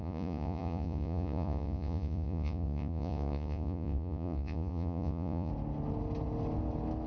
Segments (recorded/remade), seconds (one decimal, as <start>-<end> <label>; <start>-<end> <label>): 0.0-5.5 remade; 5.5-7.1 recorded